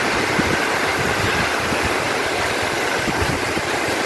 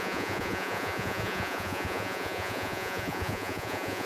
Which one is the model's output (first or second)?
second